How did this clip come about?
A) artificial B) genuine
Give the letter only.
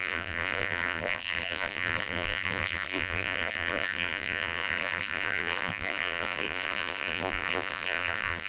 A